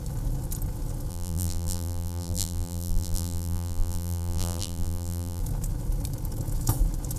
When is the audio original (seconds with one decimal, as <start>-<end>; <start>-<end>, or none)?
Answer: 0.0-1.1; 5.4-7.2